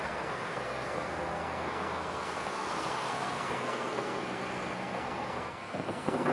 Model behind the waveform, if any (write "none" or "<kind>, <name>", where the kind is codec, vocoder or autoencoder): codec, SNAC